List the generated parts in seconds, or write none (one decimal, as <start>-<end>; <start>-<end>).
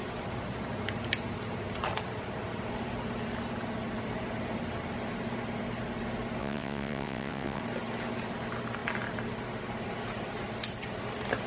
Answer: 6.4-7.6